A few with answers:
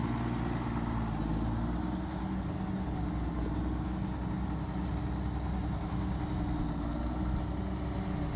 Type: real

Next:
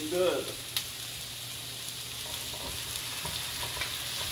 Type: real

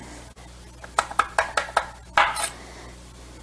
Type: real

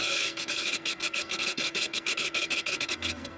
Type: fake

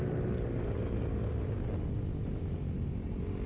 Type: real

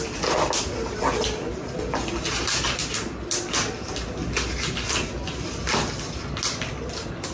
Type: real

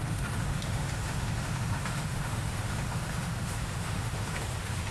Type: fake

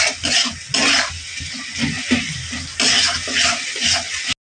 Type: real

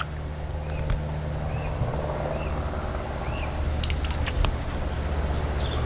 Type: real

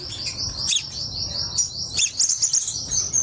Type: real